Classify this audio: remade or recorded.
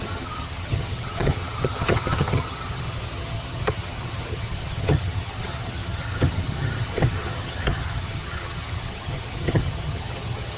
remade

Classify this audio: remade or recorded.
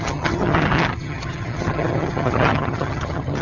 remade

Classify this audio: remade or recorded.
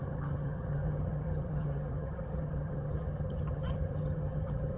remade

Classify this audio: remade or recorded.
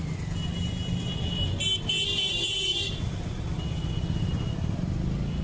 recorded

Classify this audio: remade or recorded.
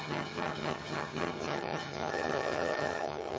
remade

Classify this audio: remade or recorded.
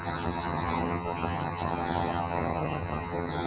remade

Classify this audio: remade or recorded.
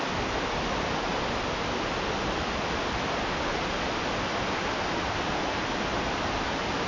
recorded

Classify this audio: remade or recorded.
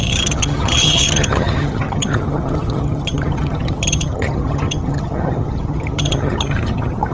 remade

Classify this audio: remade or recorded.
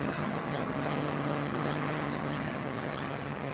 remade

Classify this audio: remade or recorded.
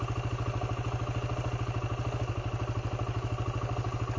recorded